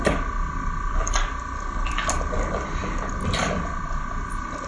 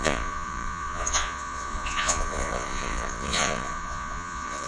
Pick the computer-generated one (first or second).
second